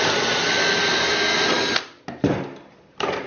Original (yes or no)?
yes